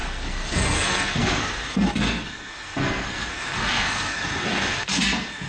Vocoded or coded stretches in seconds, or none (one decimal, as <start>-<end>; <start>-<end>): 0.0-5.5